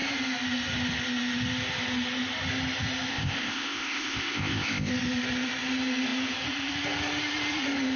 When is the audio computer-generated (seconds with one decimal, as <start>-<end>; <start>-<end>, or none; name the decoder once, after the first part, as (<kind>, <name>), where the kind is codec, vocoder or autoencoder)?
3.1-4.9 (codec, ZipCodec)